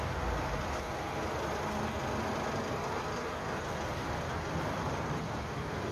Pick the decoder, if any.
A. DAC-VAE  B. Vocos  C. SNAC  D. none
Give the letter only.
D